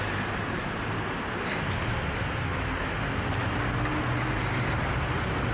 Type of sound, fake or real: real